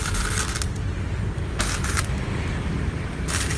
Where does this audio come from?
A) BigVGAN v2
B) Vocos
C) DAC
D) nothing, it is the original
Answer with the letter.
D